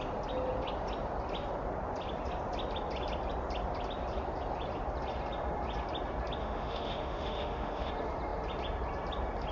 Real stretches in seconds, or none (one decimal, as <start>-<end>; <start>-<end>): 0.0-6.4; 7.9-9.5